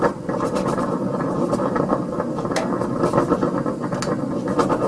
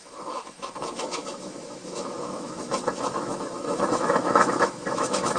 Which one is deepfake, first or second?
second